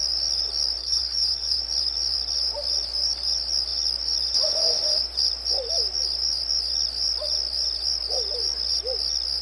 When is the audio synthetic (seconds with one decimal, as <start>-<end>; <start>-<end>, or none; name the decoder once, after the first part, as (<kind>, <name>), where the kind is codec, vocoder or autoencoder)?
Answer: 0.8-1.6 (codec, HILCodec)